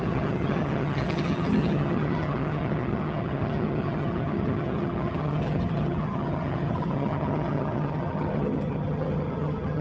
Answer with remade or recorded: remade